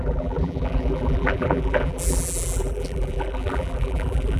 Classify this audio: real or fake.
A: fake